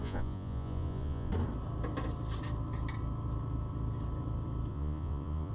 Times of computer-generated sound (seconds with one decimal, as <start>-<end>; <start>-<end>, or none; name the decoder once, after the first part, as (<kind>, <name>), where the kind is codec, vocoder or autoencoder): 0.0-1.3 (vocoder, Vocos); 4.7-5.5